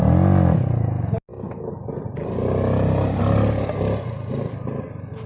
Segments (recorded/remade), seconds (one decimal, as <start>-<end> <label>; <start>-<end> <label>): 0.0-5.3 recorded